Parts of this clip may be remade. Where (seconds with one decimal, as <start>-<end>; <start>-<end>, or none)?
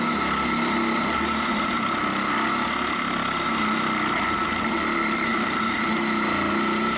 none